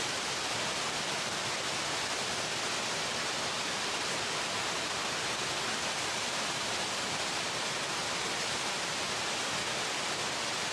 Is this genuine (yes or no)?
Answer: yes